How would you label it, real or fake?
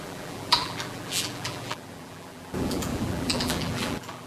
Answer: fake